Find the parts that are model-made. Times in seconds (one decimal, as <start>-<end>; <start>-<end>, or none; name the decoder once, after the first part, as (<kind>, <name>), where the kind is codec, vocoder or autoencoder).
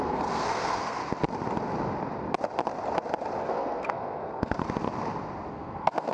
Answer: 0.0-1.0 (codec, SNAC); 3.4-4.6; 5.5-6.1